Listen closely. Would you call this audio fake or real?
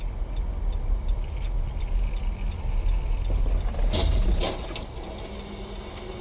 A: real